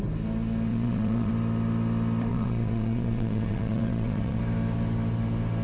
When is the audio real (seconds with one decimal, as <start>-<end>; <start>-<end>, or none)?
0.0-0.7; 1.3-2.3; 4.4-5.6